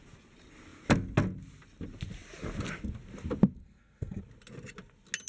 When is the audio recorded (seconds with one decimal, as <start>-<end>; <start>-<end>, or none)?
0.0-3.6; 4.2-5.3